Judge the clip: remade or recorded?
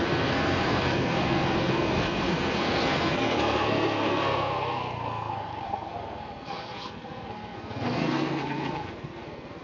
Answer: remade